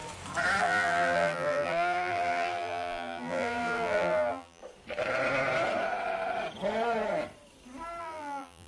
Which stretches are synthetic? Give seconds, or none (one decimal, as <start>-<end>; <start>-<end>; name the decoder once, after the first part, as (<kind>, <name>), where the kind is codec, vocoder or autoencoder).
0.6-4.6 (vocoder, BigVGAN v2); 8.0-8.7